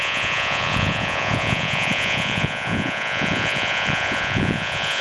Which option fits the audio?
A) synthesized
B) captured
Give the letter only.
A